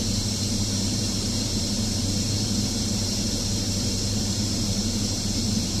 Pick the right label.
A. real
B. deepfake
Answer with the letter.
B